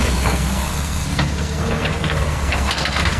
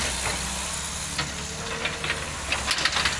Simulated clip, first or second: first